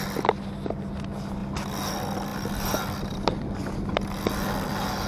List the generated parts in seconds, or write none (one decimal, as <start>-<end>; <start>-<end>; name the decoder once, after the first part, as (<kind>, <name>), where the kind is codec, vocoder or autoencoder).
none